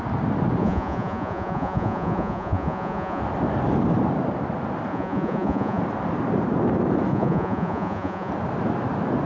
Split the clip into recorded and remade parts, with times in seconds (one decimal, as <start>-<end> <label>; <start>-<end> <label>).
0.0-0.6 recorded; 0.6-3.2 remade; 3.2-4.9 recorded; 4.9-5.8 remade; 5.8-7.1 recorded; 7.1-8.3 remade; 8.3-9.3 recorded